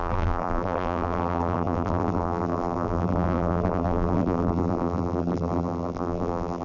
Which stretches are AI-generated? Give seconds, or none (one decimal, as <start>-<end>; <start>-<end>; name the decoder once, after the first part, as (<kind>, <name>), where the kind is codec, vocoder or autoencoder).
0.0-6.6 (vocoder, BigVGAN v2)